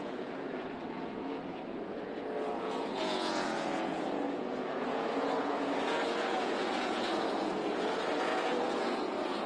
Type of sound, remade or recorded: remade